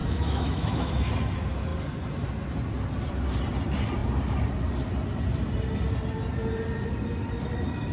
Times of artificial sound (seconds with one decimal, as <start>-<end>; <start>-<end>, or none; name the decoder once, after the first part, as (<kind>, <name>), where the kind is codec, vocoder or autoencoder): 0.0-1.1 (autoencoder, DAC-VAE)